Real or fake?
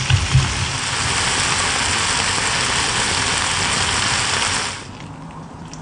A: real